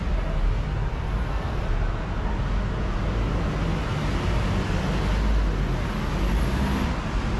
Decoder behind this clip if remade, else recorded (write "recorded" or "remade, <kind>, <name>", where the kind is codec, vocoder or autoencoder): recorded